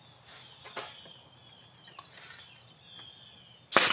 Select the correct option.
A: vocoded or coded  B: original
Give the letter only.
B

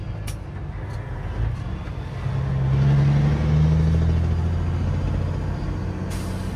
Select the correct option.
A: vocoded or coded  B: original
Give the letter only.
B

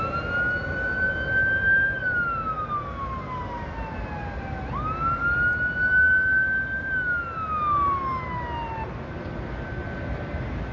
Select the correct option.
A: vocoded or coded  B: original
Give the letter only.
B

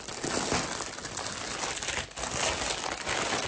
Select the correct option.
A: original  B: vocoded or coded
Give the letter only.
A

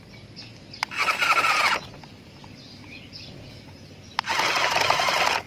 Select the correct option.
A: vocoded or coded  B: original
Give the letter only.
B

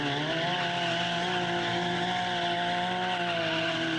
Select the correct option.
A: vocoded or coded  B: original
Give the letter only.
B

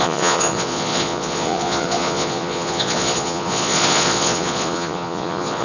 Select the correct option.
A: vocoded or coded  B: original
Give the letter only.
A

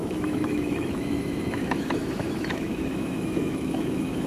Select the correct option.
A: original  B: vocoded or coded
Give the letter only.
B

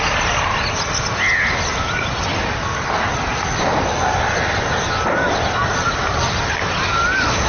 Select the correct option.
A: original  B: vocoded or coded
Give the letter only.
A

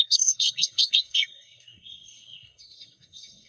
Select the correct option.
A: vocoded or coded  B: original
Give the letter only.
A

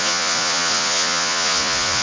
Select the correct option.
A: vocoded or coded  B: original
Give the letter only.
A